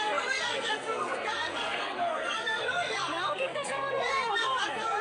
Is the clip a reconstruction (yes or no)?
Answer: yes